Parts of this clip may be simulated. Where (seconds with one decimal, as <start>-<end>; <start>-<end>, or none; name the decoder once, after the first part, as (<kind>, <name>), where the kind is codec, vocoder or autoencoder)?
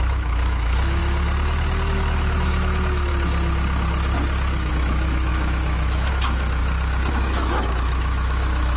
0.0-1.0 (autoencoder, DAC-VAE); 1.9-3.1; 4.7-6.6; 7.1-8.8